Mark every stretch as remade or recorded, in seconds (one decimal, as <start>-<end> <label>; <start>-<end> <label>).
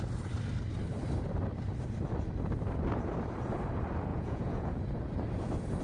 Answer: 0.0-4.1 recorded; 4.1-4.8 remade; 4.8-5.8 recorded